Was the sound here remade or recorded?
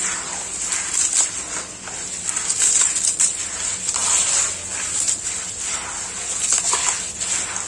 recorded